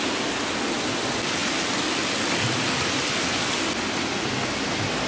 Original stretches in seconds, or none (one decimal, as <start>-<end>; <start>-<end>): 0.0-5.1

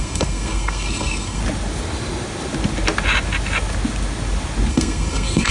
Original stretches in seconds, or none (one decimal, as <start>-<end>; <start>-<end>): 1.4-4.7